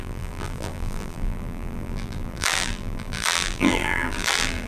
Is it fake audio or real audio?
fake